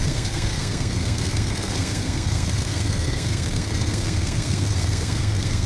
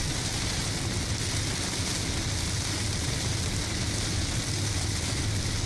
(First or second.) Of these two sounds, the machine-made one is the first